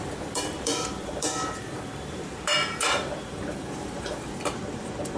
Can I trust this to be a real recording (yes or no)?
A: no